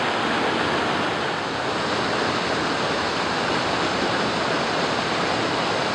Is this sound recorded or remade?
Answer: recorded